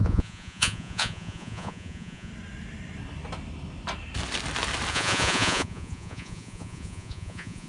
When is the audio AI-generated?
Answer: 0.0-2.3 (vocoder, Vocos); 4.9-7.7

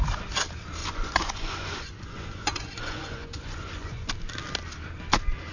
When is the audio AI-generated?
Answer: 0.8-4.1 (vocoder, Vocos)

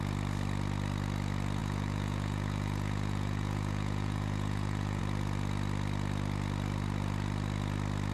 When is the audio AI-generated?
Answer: 1.6-5.0 (vocoder, Vocos)

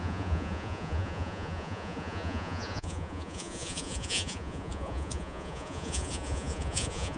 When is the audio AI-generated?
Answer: 0.0-7.2 (vocoder, Vocos)

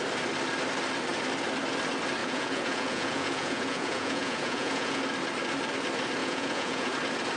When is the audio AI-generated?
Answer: 2.2-5.0 (vocoder, Vocos); 6.2-6.9

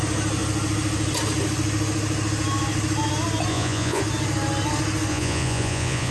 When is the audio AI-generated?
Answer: 3.5-4.0 (vocoder, Vocos); 5.1-6.1

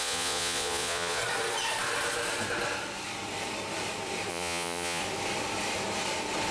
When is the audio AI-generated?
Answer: 0.0-1.2 (vocoder, Vocos); 4.3-5.0

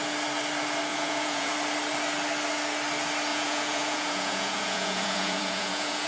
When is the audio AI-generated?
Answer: 0.9-1.5 (vocoder, Vocos); 3.3-6.1